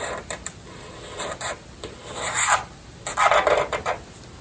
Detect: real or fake real